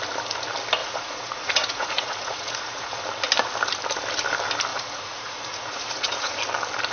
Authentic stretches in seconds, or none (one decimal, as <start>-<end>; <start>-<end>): 0.0-0.8; 3.0-4.7; 6.4-6.9